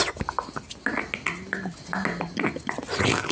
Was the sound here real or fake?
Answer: real